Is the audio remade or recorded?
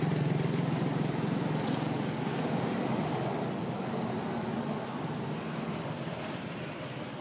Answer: recorded